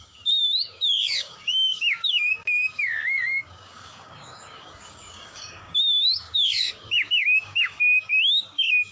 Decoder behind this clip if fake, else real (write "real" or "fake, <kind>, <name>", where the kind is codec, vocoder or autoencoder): fake, codec, DAC